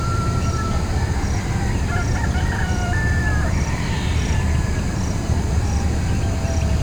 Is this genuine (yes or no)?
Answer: no